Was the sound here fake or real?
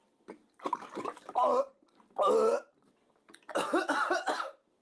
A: fake